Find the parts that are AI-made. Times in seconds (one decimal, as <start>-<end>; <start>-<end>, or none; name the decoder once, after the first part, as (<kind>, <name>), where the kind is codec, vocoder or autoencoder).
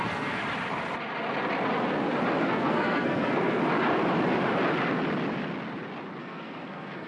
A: 0.0-0.4 (codec, SNAC); 2.4-3.6; 6.2-7.1